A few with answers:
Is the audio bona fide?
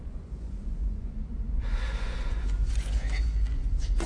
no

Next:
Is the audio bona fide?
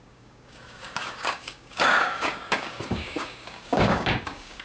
no